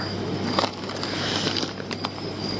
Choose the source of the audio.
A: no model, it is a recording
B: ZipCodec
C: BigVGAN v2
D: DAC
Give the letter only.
A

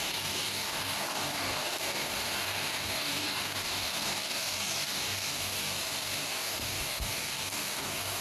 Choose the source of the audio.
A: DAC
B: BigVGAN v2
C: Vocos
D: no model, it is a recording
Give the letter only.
A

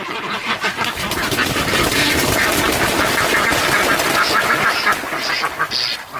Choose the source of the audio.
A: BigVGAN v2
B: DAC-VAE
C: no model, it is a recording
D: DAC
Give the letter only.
C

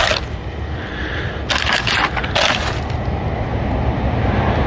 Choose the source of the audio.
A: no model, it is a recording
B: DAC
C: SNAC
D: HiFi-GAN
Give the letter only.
A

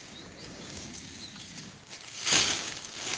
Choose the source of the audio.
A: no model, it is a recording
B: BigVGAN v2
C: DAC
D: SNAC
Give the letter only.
C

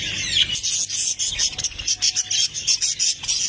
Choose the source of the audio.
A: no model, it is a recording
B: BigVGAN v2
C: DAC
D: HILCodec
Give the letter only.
A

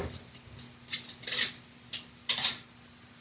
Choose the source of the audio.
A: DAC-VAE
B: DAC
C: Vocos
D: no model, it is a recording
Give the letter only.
D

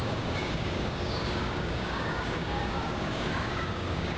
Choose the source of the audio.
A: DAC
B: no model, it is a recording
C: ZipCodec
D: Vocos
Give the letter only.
A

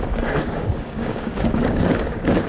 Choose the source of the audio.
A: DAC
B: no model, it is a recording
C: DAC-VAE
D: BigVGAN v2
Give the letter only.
A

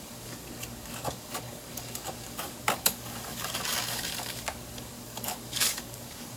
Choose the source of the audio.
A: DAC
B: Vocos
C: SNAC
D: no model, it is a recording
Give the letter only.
A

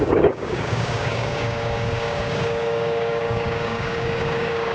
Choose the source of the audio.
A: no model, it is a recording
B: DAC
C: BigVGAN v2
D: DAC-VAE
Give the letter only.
B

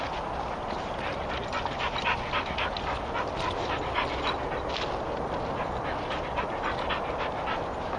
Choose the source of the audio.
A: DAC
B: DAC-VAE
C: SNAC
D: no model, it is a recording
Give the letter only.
D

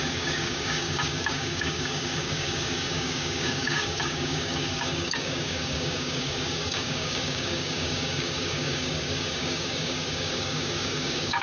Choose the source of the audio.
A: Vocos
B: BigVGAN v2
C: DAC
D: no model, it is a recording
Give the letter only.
C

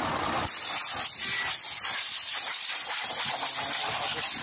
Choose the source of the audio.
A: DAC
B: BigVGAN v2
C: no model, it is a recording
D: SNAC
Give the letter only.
C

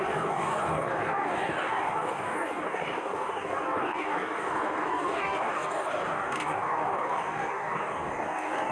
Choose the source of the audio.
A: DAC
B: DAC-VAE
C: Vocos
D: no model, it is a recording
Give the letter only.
A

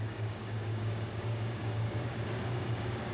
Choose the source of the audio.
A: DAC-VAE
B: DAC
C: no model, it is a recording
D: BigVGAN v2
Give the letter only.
B